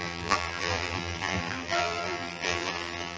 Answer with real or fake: fake